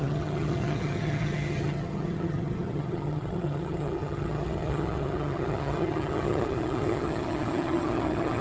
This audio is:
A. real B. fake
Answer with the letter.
B